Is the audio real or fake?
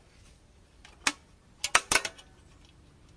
real